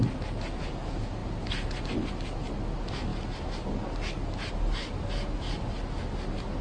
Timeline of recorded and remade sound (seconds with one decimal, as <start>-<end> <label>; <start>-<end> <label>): 0.0-6.6 recorded